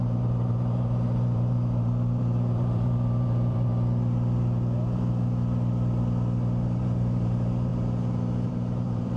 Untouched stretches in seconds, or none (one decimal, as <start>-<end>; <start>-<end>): 3.7-6.6; 7.7-8.5